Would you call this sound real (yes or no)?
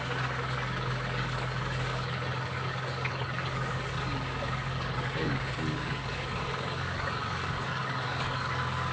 no